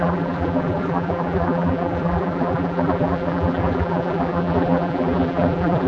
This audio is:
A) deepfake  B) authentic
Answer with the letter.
A